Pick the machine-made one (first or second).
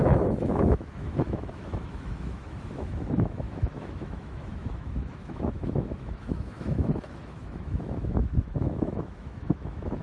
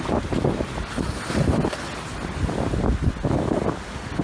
first